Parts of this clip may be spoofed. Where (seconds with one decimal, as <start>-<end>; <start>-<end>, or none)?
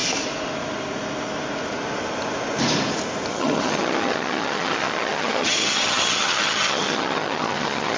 3.3-8.0